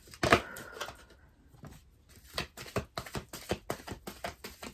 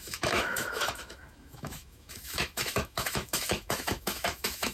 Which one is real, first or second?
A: first